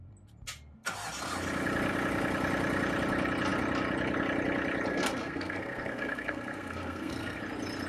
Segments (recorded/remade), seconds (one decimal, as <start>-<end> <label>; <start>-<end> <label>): 0.0-4.9 recorded; 4.9-7.4 remade; 7.4-7.9 recorded